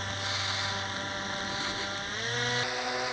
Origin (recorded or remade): recorded